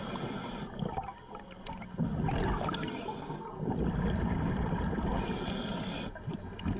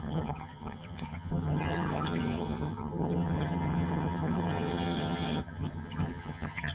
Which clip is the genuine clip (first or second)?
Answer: first